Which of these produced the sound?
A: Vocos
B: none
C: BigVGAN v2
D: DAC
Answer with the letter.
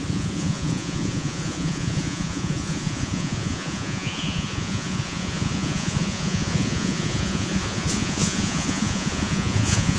A